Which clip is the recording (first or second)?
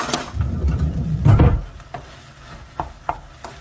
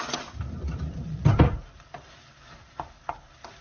first